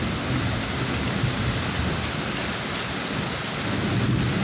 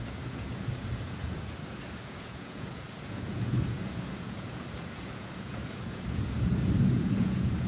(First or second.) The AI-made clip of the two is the second